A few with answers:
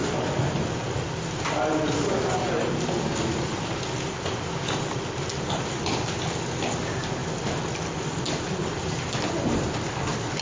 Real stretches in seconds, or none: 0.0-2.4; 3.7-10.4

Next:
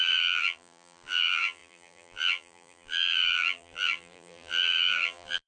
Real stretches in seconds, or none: none